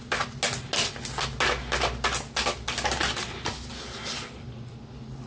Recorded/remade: recorded